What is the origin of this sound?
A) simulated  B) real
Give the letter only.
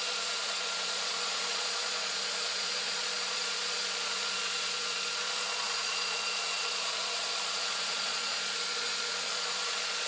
A